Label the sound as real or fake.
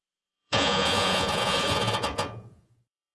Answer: fake